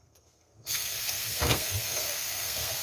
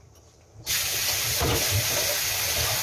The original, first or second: second